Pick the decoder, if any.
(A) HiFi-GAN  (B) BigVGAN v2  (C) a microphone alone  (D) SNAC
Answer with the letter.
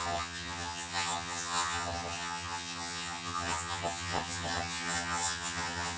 A